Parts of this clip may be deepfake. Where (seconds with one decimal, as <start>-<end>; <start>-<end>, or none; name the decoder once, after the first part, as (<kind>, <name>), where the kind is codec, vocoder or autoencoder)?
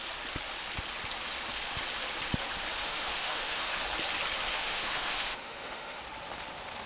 2.8-3.8 (autoencoder, DAC-VAE); 4.5-6.0